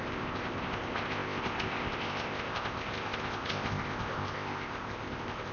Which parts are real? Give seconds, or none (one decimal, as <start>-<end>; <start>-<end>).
none